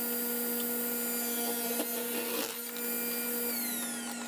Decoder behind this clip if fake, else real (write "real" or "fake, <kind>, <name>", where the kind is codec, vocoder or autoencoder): real